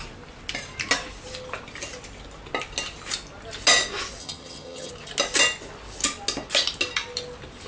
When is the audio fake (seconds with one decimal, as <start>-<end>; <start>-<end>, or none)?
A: 4.2-4.9